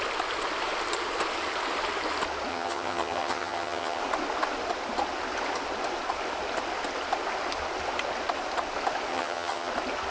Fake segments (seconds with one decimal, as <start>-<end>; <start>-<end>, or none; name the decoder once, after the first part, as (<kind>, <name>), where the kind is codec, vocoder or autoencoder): 2.5-4.0 (vocoder, HiFi-GAN); 9.1-9.7

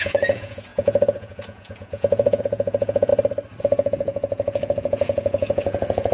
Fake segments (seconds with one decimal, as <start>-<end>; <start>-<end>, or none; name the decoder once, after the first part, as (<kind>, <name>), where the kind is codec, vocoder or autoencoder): 0.0-3.1 (vocoder, Vocos); 3.6-6.1

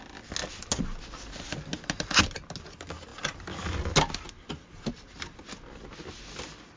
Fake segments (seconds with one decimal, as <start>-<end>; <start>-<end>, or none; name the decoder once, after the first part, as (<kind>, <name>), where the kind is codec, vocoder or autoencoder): none

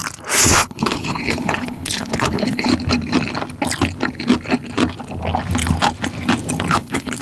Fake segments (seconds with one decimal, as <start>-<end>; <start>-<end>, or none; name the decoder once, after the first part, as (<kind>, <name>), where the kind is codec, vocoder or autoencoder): 0.5-2.7 (codec, HILCodec); 6.7-7.2

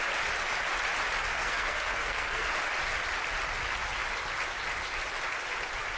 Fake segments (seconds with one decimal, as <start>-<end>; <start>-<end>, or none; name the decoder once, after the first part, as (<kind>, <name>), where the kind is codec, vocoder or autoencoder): 1.3-2.5 (codec, SNAC)

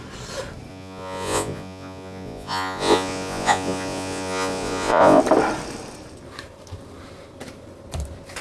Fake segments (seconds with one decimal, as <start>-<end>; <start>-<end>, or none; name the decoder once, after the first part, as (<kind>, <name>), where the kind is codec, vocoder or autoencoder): 0.7-5.2 (vocoder, Vocos)

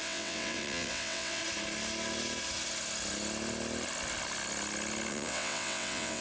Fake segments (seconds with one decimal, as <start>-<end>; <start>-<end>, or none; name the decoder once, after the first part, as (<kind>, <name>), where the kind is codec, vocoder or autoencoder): 0.0-1.4 (vocoder, WaveNeXt); 5.1-6.2